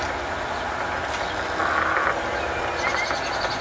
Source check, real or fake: real